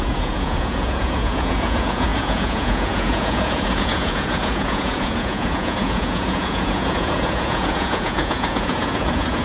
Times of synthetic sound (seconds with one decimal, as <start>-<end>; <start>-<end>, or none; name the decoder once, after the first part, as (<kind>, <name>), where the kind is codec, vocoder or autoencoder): 0.0-9.4 (vocoder, Vocos)